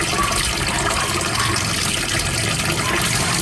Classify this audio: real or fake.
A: real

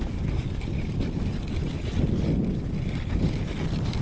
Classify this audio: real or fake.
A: fake